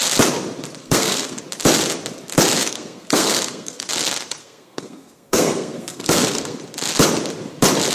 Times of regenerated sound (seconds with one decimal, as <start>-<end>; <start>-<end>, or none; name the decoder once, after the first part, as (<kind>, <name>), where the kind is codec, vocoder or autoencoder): 0.8-1.4 (codec, SNAC); 2.6-3.8; 4.4-6.6